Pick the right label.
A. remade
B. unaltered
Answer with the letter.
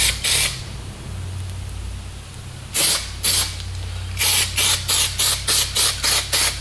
B